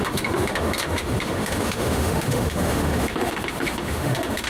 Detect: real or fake fake